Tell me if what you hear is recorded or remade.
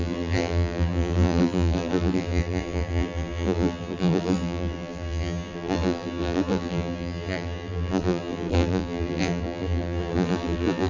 remade